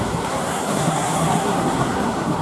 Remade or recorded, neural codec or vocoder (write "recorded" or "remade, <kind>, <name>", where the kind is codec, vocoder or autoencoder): remade, codec, SNAC